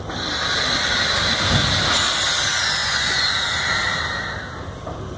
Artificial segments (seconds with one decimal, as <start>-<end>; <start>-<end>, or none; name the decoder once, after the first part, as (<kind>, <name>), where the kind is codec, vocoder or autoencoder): 2.8-3.3 (vocoder, Vocos)